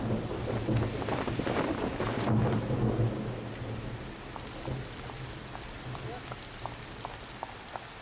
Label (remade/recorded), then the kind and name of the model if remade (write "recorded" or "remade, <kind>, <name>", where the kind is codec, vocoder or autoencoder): recorded